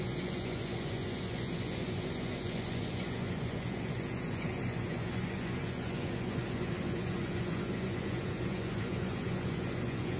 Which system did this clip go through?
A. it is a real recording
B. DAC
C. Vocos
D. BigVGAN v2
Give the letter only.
C